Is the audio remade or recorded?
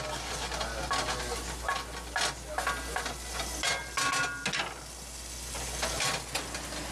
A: recorded